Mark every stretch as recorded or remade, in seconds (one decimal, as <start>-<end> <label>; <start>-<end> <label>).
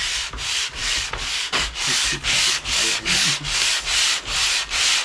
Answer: 0.0-0.8 recorded; 0.8-3.8 remade; 3.8-5.0 recorded